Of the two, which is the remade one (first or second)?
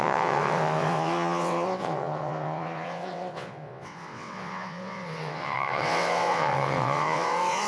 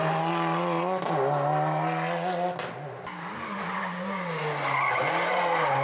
first